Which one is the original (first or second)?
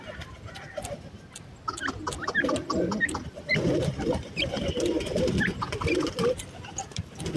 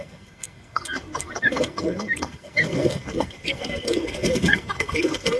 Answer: first